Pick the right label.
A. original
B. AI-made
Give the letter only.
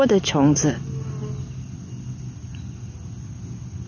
A